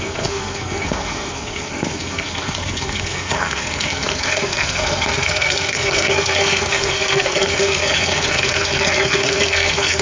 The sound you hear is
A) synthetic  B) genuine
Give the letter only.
A